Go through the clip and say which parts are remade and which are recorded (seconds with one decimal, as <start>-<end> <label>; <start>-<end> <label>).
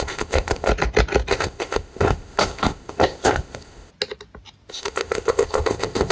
0.0-0.7 remade; 0.7-1.3 recorded; 1.3-3.9 remade; 3.9-4.7 recorded; 4.7-6.1 remade